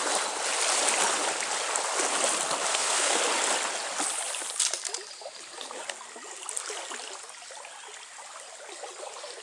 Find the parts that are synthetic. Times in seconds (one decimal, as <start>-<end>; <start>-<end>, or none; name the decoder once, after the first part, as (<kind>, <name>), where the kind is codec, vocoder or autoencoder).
2.7-3.2 (codec, SNAC)